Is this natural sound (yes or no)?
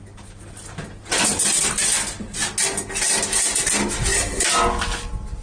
yes